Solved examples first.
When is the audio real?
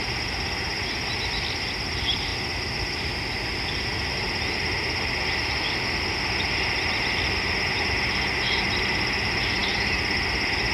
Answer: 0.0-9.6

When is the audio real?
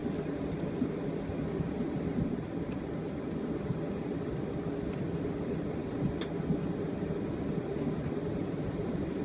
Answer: 0.0-8.4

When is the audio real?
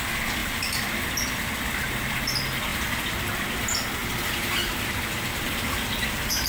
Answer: 0.0-0.4; 0.9-2.7; 3.2-4.0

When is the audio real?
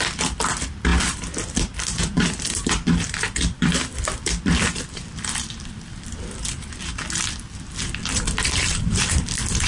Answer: 0.0-0.9; 6.2-8.0; 9.1-9.7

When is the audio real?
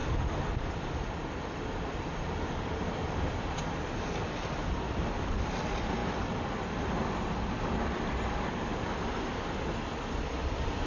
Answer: 3.3-4.6; 5.2-10.9